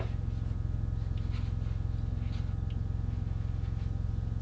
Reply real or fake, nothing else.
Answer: real